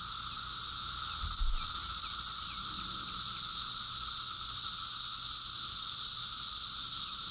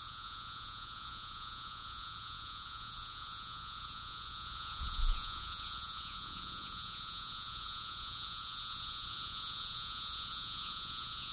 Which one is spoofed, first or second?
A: second